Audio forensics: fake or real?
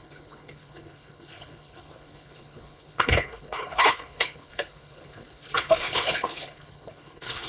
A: fake